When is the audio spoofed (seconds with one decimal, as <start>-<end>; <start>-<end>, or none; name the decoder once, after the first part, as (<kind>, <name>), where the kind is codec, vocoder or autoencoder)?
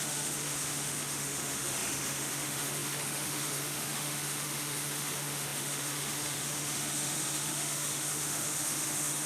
0.0-9.3 (autoencoder, DAC-VAE)